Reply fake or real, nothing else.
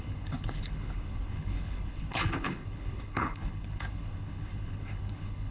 fake